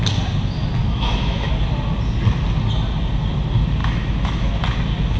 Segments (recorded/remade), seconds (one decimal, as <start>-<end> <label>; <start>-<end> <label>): 0.0-0.8 recorded; 0.8-1.5 remade; 1.5-3.8 recorded; 3.8-4.5 remade; 4.5-5.2 recorded